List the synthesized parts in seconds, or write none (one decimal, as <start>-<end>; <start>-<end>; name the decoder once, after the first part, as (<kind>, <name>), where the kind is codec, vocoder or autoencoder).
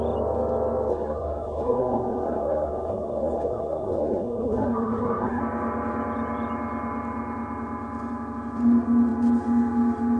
0.9-5.4 (codec, SNAC)